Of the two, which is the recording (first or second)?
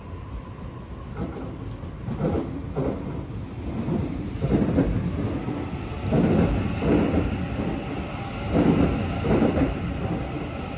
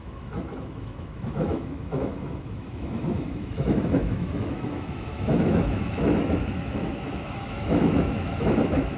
first